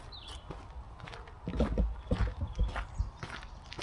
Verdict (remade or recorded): recorded